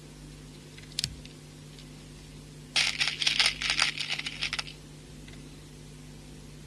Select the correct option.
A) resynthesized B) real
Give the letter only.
B